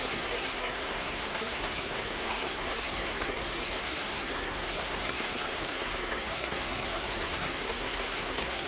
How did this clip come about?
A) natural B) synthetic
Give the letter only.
B